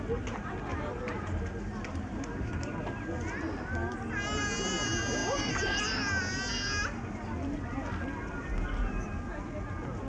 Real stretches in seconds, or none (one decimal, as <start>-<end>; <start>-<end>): 0.0-0.7; 2.5-5.2; 5.8-10.1